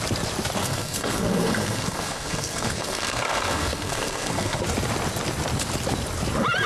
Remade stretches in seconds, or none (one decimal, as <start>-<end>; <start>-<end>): 0.6-4.6